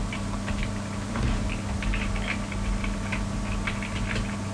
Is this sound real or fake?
real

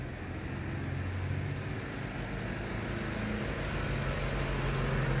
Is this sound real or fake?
real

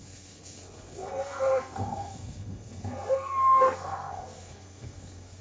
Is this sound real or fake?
fake